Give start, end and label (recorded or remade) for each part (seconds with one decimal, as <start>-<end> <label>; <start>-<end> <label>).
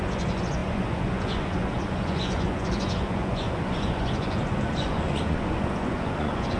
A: 0.0-6.6 remade